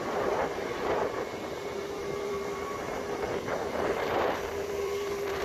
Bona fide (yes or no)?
no